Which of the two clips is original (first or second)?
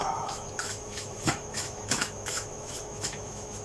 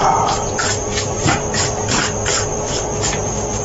second